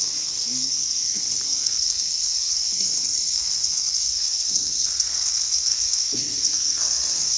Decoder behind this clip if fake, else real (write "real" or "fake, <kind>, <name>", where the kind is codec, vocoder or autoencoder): fake, codec, SNAC